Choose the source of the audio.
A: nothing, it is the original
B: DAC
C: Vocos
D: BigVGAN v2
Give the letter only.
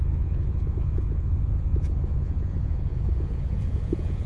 C